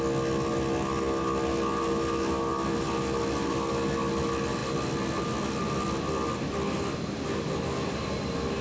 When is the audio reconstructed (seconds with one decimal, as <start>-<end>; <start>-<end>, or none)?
none